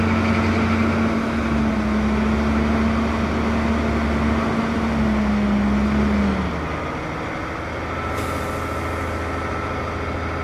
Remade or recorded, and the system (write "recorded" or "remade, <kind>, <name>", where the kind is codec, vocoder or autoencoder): recorded